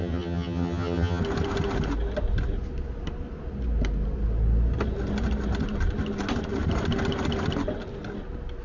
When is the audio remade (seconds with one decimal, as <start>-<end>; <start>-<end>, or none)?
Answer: 0.0-1.2